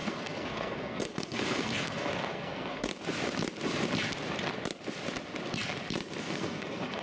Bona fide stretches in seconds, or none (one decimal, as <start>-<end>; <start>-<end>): 2.9-6.2

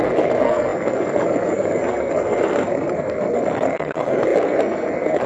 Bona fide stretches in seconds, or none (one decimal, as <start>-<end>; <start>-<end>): none